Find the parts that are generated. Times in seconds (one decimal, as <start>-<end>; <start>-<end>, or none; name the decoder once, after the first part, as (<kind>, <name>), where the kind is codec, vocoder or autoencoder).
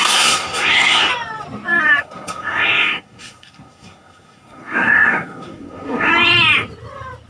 0.0-1.1 (codec, SNAC); 2.0-6.1